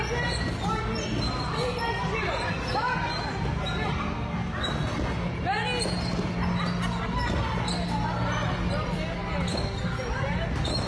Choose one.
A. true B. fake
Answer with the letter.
A